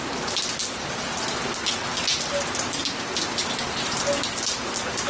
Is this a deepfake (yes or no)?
no